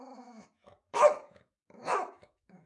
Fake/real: fake